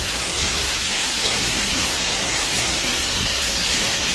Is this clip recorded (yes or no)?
no